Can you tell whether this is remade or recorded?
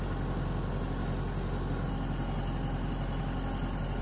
recorded